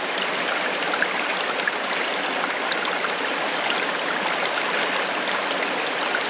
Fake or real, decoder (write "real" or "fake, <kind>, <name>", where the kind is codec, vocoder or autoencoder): real